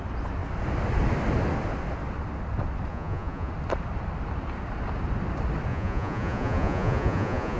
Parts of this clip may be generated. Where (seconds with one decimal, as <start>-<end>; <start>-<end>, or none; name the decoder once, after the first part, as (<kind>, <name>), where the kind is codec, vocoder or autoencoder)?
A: 2.9-3.5 (vocoder, Vocos); 5.7-7.6